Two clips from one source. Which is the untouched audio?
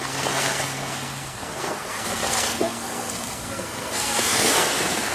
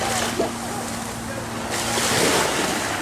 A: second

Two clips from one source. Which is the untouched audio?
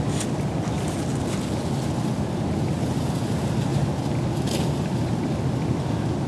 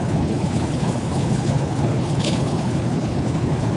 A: first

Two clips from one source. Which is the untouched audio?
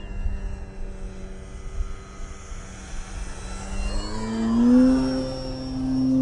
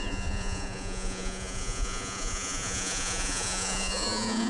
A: first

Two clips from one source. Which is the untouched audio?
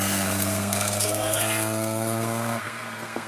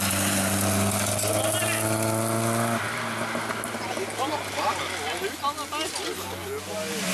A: second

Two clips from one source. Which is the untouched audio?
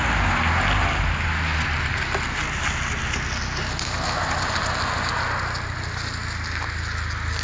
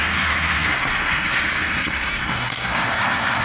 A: first